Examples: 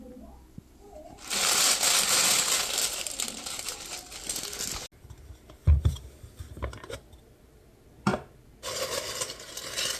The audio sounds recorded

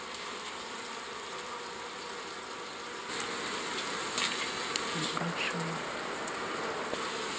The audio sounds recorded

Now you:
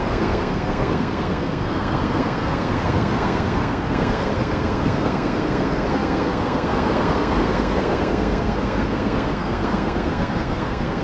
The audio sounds remade